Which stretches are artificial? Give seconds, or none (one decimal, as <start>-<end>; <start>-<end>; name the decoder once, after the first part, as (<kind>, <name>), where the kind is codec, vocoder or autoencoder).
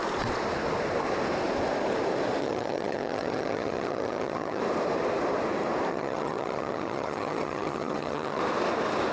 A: 2.4-4.6 (vocoder, HiFi-GAN); 5.9-8.4